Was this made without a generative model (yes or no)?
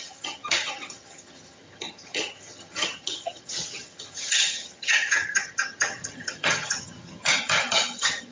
no